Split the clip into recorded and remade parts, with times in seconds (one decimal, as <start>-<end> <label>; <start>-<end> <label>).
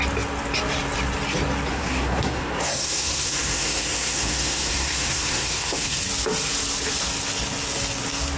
0.0-1.7 recorded; 1.7-6.0 remade; 6.0-8.4 recorded